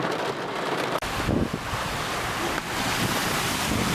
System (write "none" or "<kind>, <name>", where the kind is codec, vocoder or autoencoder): none